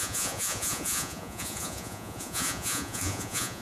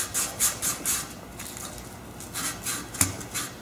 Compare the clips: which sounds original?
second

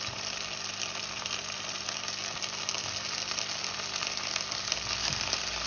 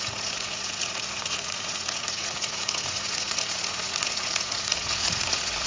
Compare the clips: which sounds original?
first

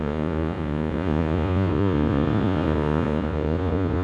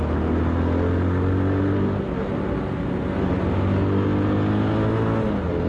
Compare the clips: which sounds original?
second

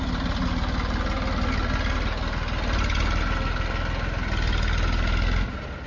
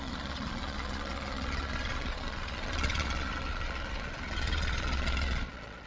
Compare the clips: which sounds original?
first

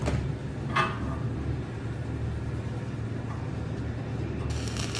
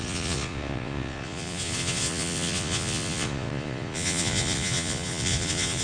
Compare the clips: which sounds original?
first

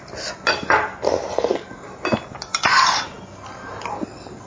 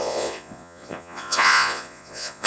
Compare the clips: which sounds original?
first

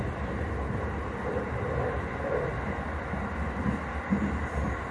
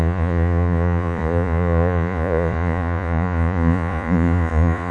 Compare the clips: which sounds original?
first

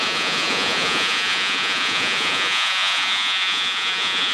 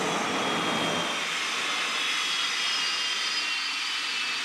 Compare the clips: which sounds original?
second